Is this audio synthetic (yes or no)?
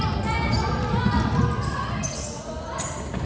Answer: no